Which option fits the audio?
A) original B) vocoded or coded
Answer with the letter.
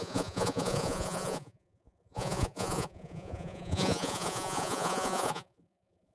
B